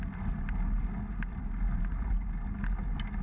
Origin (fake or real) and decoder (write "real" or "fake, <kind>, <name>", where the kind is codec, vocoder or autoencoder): real